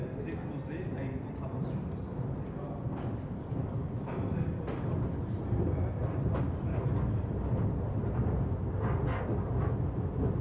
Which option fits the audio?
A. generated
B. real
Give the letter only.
B